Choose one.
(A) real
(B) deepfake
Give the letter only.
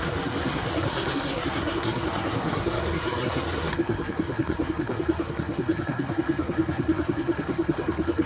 B